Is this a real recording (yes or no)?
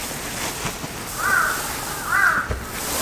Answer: yes